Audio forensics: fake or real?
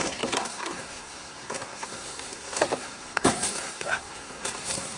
fake